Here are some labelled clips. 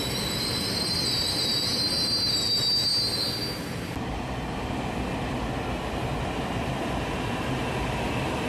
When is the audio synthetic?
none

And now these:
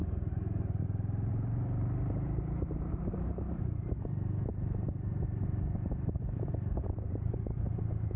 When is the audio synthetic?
1.3-8.2 (vocoder, BigVGAN v2)

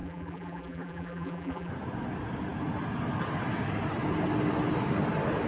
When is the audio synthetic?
0.0-1.7 (vocoder, BigVGAN v2)